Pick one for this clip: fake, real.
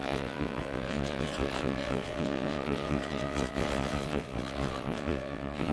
fake